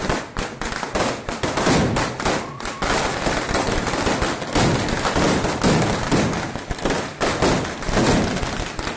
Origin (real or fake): real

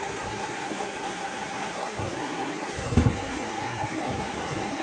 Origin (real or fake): fake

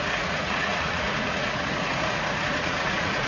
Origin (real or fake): fake